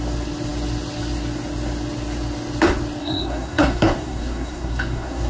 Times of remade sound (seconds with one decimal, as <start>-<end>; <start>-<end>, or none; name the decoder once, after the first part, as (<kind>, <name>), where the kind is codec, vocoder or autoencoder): 3.0-5.3 (codec, SNAC)